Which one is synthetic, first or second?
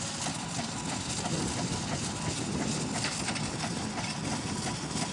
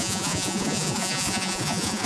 second